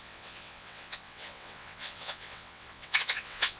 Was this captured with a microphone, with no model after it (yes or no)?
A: no